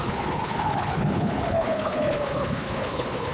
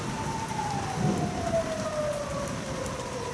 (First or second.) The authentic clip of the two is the second